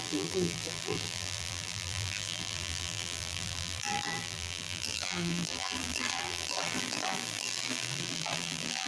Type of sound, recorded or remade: remade